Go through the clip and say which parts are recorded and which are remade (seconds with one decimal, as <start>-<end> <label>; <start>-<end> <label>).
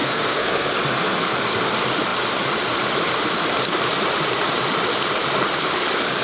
0.0-0.7 remade; 0.7-6.2 recorded